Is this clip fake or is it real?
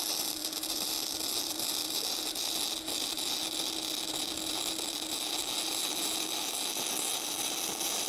real